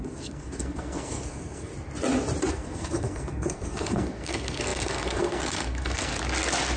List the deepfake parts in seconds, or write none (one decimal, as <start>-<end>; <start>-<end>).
0.0-1.7; 2.5-6.1